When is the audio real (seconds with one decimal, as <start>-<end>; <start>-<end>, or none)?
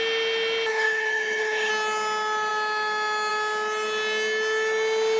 0.0-0.7; 1.7-5.2